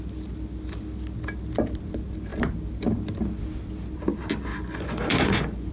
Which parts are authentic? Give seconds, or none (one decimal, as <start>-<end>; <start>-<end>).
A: 0.0-4.5